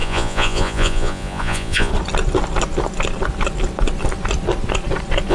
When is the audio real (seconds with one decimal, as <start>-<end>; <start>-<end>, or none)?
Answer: 1.9-5.3